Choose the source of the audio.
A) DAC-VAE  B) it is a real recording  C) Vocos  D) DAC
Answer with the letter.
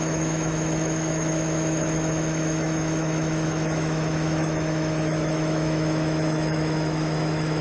A